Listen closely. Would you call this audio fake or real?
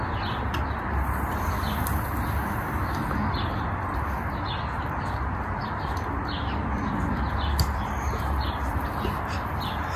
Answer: real